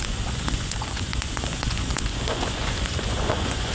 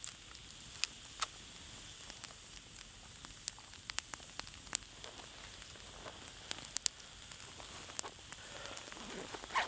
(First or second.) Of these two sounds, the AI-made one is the first